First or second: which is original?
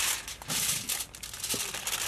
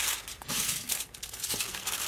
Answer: first